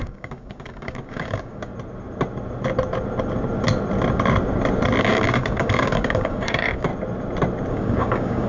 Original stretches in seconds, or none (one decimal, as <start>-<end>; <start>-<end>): 1.7-5.0; 6.9-7.7

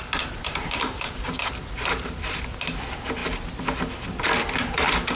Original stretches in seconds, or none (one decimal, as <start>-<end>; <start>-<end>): 0.0-0.4; 1.5-5.2

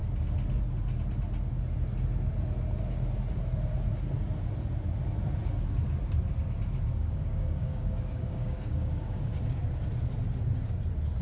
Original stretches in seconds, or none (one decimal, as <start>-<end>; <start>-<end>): 0.0-7.0; 9.4-11.2

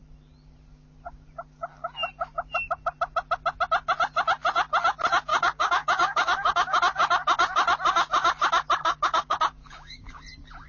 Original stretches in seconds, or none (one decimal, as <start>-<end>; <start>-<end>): 0.0-5.3; 6.8-8.8; 10.2-10.7

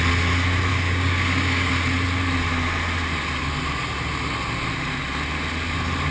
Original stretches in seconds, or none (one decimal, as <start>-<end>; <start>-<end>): 0.0-0.7; 1.7-6.1

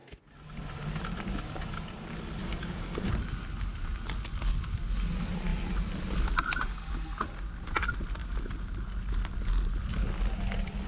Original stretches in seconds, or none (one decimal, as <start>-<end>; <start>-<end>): 0.0-2.4; 3.1-10.9

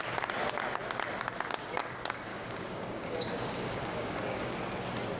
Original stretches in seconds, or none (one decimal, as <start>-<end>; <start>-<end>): 0.0-2.3; 4.5-5.2